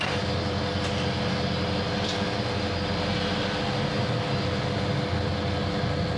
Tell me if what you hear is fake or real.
real